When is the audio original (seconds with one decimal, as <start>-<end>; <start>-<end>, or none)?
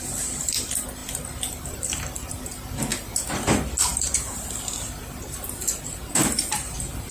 2.9-3.5